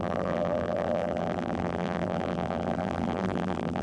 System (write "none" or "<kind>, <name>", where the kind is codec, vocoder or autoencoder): vocoder, BigVGAN v2